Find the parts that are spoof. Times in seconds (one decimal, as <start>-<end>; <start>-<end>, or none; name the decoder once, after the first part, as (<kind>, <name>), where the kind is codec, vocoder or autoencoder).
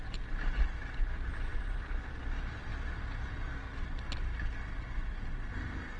1.3-1.8 (vocoder, WaveNeXt)